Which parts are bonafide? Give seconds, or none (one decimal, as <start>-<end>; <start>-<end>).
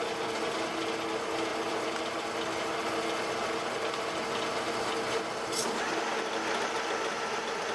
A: 0.0-1.5; 2.3-7.7